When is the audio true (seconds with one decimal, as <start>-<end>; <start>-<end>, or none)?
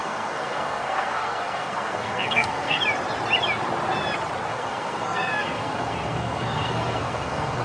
2.8-4.5